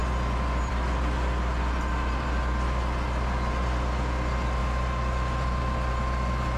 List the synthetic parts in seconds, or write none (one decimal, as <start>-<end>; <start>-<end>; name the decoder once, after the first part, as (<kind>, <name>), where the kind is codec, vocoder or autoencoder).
4.6-5.6 (vocoder, BigVGAN v2)